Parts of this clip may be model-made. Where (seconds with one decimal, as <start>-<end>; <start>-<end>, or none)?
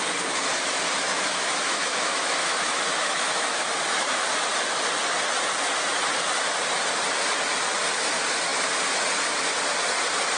1.1-4.3